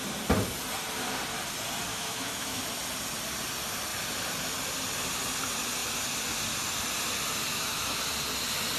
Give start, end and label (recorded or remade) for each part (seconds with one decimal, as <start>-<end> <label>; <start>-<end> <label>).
0.0-1.9 recorded; 1.9-2.6 remade; 2.6-7.5 recorded; 7.5-8.0 remade; 8.0-8.8 recorded